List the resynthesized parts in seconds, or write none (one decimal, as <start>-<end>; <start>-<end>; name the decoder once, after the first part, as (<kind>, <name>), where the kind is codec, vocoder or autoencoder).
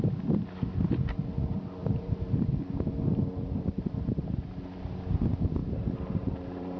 1.8-2.4 (vocoder, BigVGAN v2); 3.3-3.9; 5.6-6.8